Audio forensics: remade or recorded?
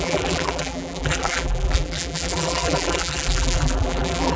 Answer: remade